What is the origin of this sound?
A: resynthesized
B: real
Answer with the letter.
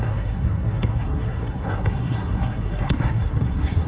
A